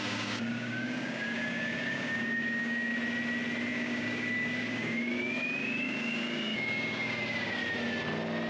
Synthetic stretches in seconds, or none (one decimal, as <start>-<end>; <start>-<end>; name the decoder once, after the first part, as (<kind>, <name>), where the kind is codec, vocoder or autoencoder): 0.0-2.9 (codec, DAC); 3.7-7.6